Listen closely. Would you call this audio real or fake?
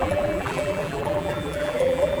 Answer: fake